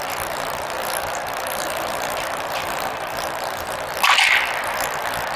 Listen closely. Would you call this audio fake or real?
real